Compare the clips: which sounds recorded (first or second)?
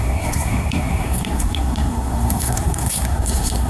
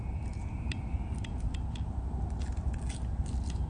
second